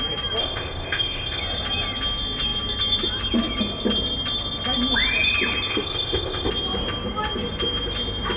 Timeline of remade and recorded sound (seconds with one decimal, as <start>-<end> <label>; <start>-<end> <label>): 0.0-0.4 recorded; 0.4-1.4 remade; 1.4-5.7 recorded; 5.7-6.5 remade; 6.5-8.4 recorded